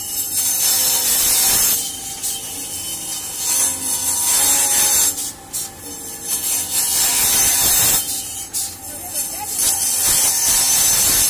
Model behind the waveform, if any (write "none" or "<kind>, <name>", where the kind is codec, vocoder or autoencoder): none